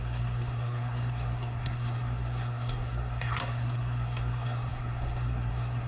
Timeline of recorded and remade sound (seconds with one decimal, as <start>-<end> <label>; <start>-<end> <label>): 0.0-5.9 remade